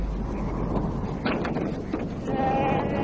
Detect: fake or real real